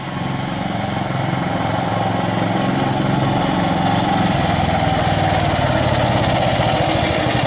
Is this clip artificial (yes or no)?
no